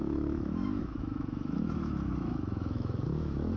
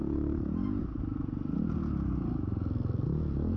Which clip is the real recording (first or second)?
second